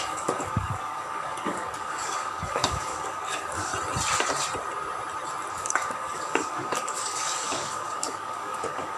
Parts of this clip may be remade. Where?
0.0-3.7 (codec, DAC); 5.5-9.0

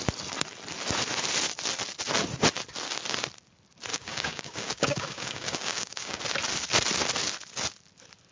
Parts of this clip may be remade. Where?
3.9-6.2 (codec, DAC)

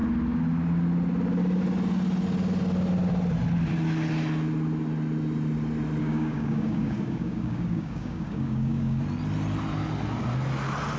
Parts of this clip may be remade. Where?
6.0-9.0 (codec, DAC)

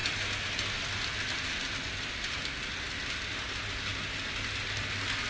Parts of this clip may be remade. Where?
none